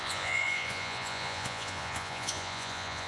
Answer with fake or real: fake